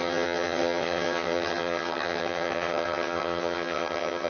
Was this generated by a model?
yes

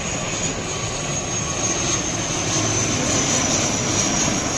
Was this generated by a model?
no